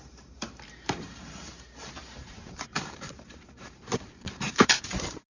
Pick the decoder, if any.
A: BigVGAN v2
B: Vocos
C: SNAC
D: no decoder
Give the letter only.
A